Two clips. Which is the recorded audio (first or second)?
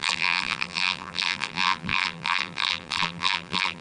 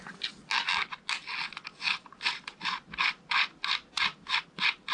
second